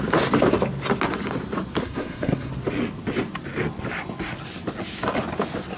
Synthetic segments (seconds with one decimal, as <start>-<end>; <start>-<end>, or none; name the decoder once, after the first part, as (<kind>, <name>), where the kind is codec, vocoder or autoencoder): 1.8-2.5 (codec, SNAC)